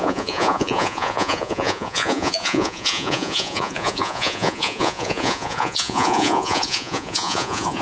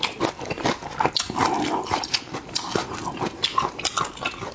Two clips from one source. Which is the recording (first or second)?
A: second